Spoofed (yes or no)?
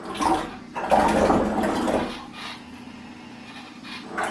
no